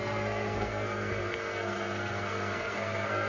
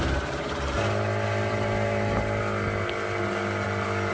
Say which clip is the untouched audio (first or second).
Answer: second